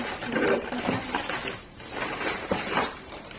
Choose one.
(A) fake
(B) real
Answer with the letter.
A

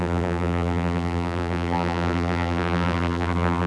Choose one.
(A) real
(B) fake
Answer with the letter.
B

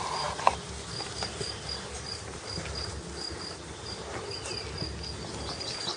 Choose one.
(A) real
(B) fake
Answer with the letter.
A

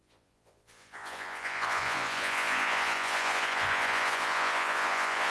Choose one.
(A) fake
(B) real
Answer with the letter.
A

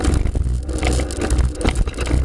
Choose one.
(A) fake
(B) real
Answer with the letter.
B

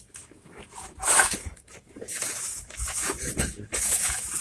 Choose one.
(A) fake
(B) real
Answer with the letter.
A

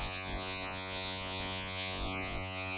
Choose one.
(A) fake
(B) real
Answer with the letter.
A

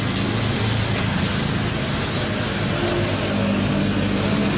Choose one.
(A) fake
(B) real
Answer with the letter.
B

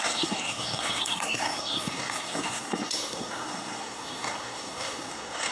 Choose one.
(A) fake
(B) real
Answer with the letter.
A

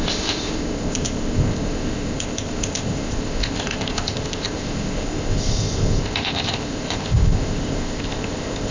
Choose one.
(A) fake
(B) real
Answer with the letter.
A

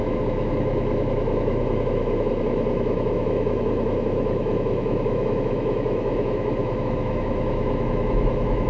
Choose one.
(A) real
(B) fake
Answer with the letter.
B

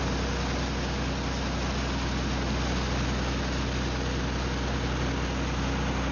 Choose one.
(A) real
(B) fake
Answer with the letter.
A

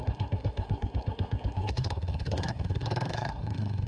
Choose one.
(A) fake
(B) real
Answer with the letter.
A